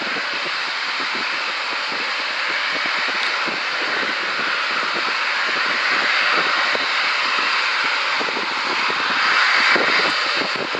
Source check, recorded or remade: recorded